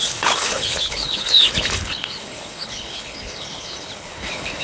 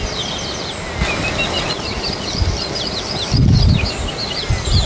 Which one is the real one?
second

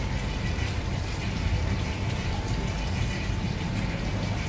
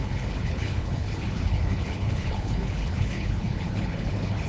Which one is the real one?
first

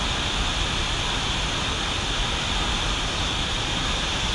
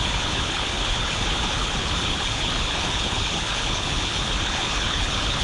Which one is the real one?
first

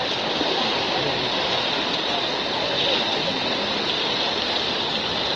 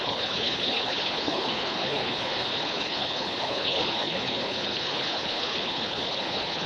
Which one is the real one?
first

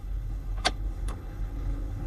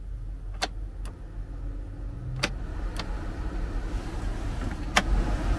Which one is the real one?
second